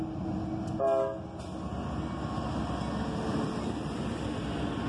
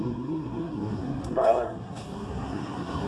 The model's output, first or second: second